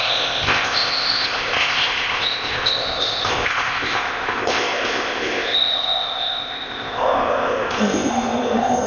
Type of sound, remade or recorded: remade